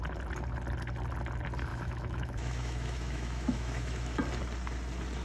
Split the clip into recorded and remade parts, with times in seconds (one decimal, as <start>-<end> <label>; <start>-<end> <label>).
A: 0.0-1.7 recorded; 1.7-4.2 remade; 4.2-5.2 recorded